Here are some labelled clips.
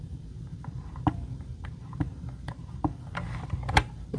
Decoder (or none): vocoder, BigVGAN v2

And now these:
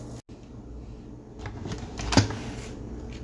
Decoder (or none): none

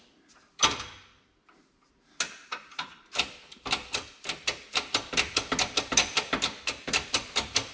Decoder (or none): none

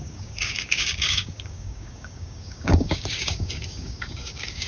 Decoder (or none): codec, DAC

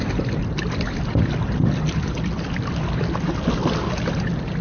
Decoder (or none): none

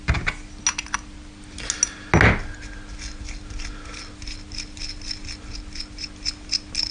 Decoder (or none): none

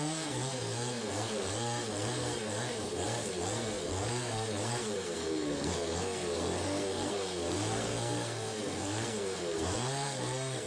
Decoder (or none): codec, SNAC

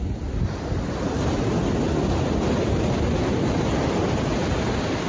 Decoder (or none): none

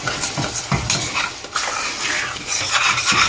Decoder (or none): none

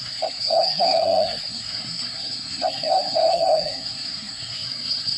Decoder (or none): codec, SNAC